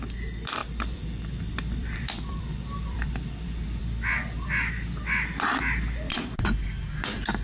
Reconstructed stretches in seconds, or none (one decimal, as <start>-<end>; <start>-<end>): 0.6-3.8